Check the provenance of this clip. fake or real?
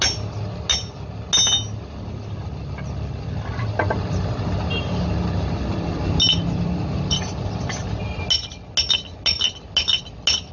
real